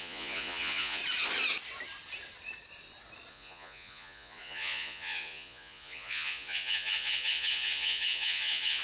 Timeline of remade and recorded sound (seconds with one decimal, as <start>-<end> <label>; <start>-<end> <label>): 0.0-1.0 remade; 1.0-3.3 recorded; 3.3-8.8 remade